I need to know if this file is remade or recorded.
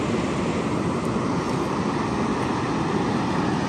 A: recorded